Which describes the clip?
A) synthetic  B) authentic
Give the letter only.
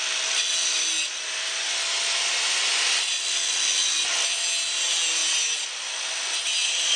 B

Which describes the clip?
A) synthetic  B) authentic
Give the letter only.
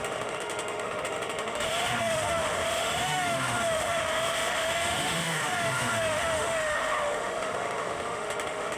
A